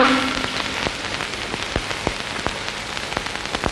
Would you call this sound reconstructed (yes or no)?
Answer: no